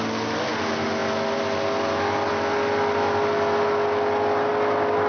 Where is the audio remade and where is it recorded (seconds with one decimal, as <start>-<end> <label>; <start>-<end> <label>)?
0.0-5.1 recorded